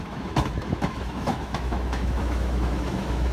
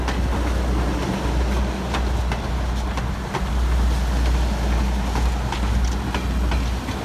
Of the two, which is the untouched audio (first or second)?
second